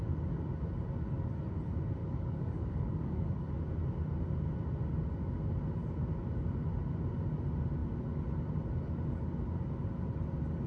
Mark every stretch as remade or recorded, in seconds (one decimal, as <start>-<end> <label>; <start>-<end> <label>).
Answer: 0.0-2.0 recorded; 2.0-3.5 remade; 3.5-10.7 recorded